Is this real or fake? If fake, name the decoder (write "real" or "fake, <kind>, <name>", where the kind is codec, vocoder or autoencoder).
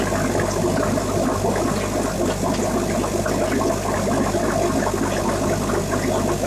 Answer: real